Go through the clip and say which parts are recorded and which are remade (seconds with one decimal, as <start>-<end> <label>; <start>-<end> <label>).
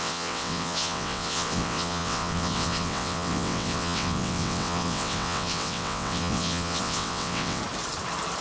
0.0-7.6 remade; 7.6-8.4 recorded